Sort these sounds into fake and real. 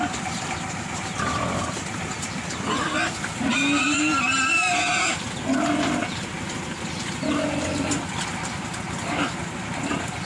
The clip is real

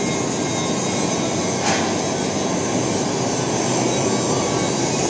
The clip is real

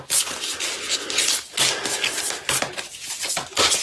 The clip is real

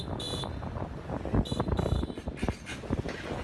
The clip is real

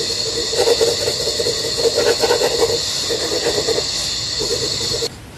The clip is real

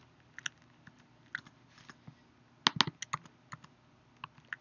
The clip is real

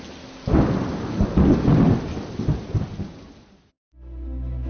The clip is real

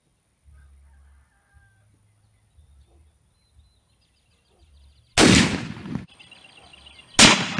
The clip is real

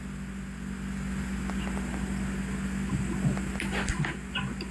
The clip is real